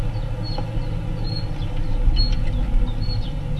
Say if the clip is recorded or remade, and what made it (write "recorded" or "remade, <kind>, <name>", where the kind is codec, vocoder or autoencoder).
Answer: recorded